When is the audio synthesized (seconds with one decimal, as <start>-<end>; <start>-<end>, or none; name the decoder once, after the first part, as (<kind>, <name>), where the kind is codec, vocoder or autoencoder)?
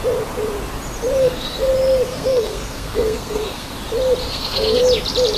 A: 1.2-1.7 (codec, SNAC); 2.1-3.7; 4.2-4.8